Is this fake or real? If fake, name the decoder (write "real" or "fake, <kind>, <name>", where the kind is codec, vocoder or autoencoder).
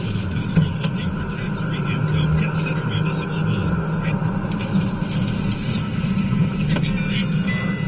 real